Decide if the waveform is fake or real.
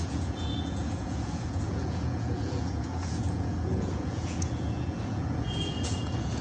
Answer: fake